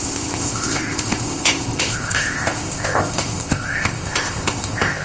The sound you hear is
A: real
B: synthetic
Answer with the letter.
B